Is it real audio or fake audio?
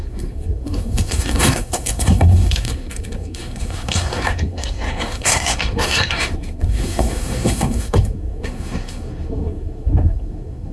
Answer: fake